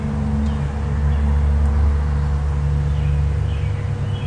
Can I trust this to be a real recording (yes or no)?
yes